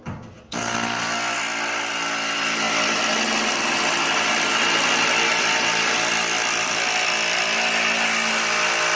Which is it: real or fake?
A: real